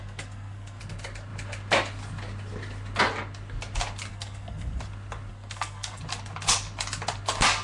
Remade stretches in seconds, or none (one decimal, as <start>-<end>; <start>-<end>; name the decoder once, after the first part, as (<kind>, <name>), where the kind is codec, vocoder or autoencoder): 0.0-0.8 (codec, SNAC); 4.1-4.8; 5.3-6.0